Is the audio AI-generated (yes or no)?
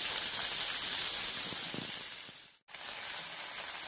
no